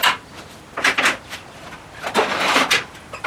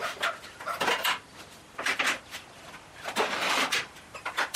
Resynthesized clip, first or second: second